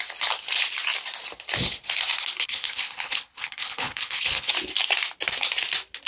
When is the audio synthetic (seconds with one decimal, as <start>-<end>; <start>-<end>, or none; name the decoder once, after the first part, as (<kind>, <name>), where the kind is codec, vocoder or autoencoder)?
2.4-4.5 (codec, HILCodec)